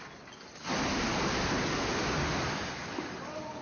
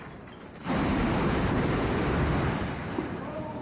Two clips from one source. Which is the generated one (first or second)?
second